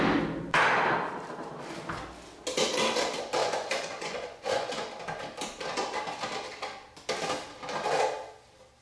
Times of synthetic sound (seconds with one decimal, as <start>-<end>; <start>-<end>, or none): 3.4-4.9